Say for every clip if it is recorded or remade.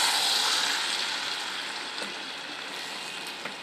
remade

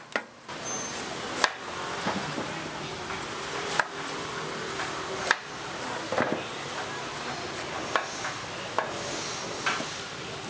recorded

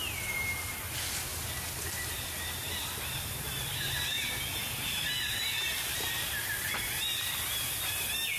recorded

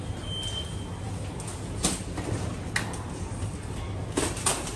recorded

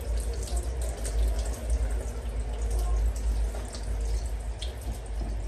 recorded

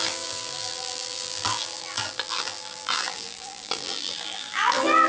remade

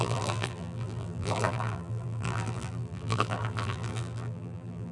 remade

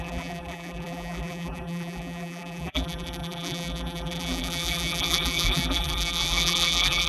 remade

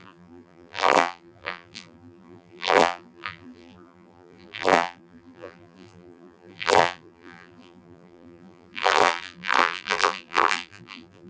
remade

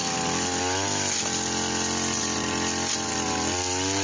recorded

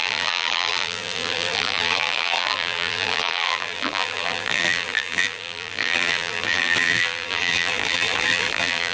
remade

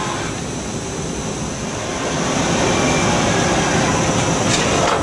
recorded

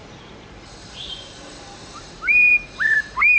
remade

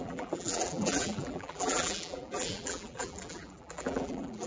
remade